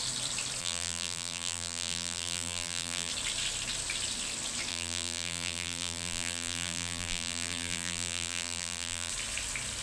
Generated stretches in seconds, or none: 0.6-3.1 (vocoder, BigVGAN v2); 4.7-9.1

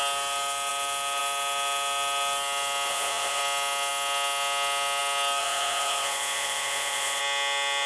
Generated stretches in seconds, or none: 2.9-3.4 (vocoder, Vocos); 5.4-7.2

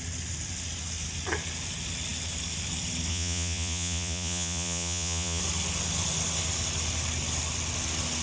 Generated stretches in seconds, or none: 3.1-5.4 (vocoder, Vocos)

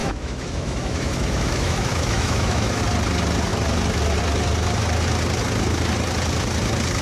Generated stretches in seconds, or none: 0.0-2.8 (autoencoder, DAC-VAE)

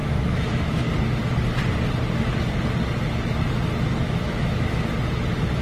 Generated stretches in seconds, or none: 0.0-0.9 (autoencoder, DAC-VAE); 4.0-4.8

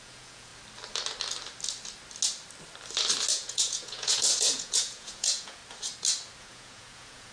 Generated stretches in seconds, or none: 0.0-0.5 (vocoder, Vocos); 3.3-5.6; 6.4-7.3